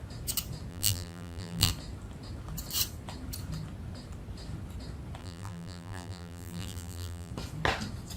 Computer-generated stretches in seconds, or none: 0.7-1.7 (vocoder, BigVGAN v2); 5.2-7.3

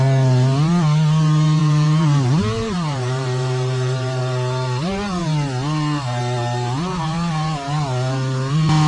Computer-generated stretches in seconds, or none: 1.6-4.2 (vocoder, BigVGAN v2)

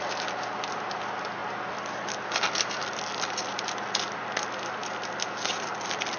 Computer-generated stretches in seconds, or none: none

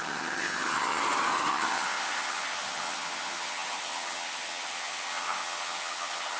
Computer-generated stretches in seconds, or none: 0.0-1.0 (vocoder, HiFi-GAN); 1.5-6.4

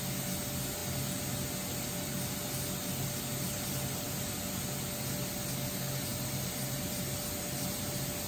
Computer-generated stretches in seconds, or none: 6.1-7.0 (vocoder, BigVGAN v2)

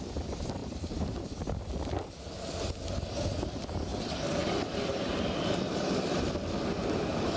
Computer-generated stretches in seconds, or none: 0.6-1.2 (vocoder, BigVGAN v2)

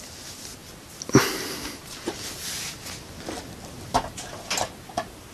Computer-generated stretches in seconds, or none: none

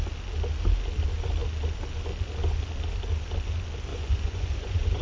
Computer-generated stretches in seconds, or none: 3.9-5.0 (vocoder, Vocos)